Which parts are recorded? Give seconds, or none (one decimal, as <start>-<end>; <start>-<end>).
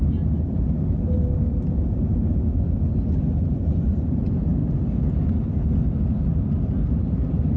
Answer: 1.3-3.3; 4.6-7.0